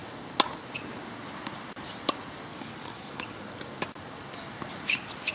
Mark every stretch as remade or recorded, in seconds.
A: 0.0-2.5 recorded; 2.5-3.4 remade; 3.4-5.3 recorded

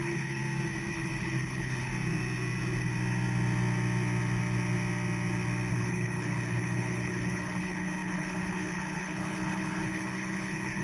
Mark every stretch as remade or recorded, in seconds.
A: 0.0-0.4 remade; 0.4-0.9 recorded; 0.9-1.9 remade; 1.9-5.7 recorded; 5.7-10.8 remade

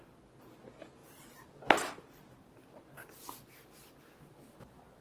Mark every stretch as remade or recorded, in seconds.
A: 0.0-5.0 recorded

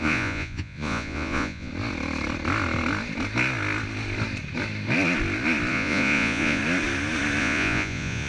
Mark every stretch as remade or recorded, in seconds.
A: 0.0-1.7 remade; 1.7-5.7 recorded; 5.7-6.6 remade; 6.6-7.4 recorded; 7.4-8.3 remade

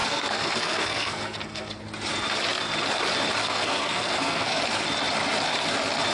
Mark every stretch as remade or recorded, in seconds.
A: 0.0-1.8 remade; 1.8-3.4 recorded; 3.4-4.6 remade; 4.6-6.1 recorded